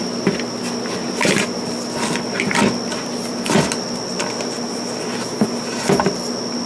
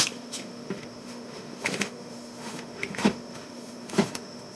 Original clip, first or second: first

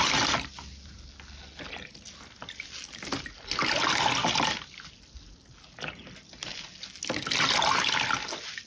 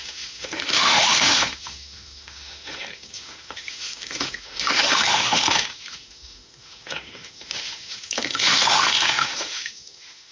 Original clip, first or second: first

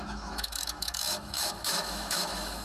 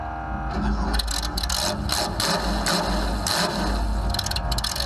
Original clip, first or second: second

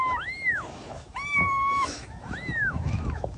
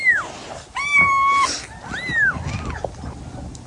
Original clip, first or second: second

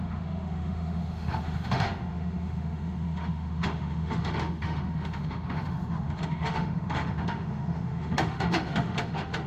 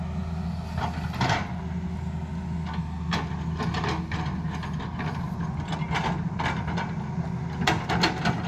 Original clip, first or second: second